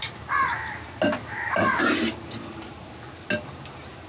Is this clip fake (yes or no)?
no